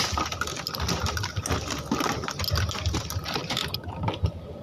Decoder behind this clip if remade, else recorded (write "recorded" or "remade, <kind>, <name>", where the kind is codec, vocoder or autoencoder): recorded